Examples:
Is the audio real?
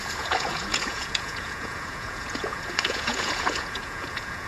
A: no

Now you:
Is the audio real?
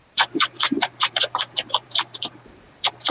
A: no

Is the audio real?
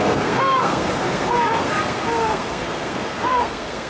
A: no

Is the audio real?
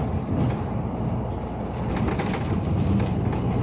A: yes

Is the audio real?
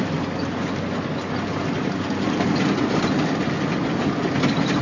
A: yes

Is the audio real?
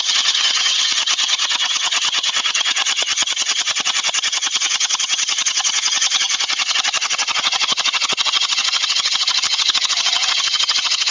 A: no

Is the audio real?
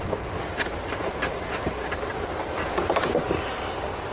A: yes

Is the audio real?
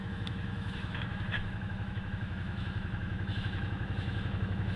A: no